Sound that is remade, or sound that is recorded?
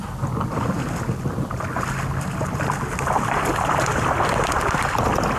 recorded